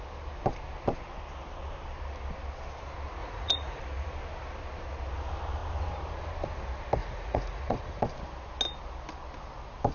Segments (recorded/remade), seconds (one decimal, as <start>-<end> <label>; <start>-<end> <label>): 0.0-3.2 recorded; 3.2-3.8 remade; 3.8-7.0 recorded; 7.0-8.0 remade; 8.0-9.9 recorded